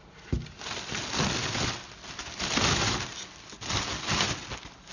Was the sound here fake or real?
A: real